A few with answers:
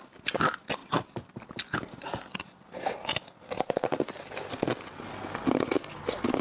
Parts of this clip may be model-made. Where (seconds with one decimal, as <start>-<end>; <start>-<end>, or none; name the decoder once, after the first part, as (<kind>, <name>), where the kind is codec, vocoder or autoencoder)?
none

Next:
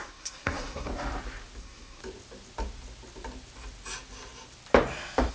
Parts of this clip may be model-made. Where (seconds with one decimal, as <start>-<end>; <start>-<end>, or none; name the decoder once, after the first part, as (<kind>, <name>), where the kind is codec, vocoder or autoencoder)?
0.0-0.9 (codec, SNAC); 1.6-2.0

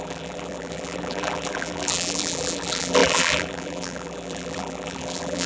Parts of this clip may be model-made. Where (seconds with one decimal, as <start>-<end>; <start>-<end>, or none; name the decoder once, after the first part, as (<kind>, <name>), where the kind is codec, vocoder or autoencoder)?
0.0-5.5 (vocoder, BigVGAN v2)

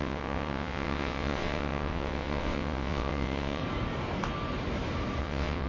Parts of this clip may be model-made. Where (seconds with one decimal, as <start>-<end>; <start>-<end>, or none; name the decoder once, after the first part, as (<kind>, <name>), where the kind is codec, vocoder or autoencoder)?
0.0-3.6 (vocoder, WaveNeXt); 5.2-5.7

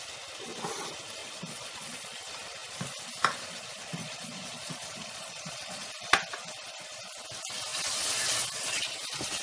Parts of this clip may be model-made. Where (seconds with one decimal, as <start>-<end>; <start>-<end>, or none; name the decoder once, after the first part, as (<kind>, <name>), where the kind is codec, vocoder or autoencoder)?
1.2-2.2 (vocoder, Vocos); 4.0-5.9